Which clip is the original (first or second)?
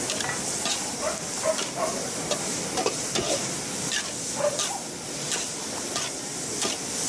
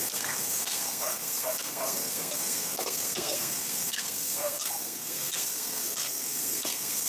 first